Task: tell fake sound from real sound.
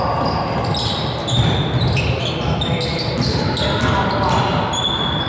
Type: real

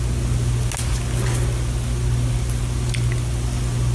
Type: real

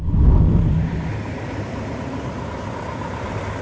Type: real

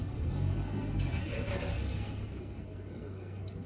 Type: fake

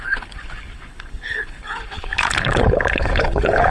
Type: fake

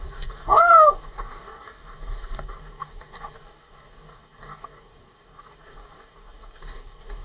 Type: fake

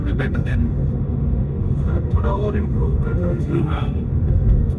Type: fake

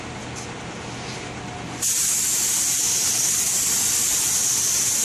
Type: real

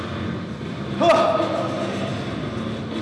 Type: real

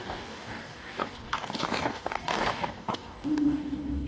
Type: fake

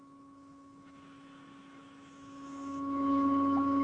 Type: fake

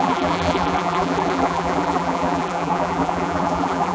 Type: fake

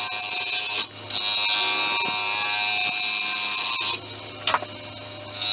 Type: real